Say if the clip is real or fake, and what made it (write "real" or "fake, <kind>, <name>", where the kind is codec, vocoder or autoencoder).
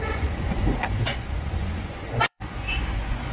fake, vocoder, Vocos